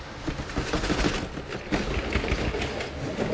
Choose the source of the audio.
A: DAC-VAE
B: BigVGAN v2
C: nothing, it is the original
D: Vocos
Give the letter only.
C